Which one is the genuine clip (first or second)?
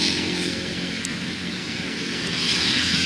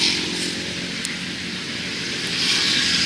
second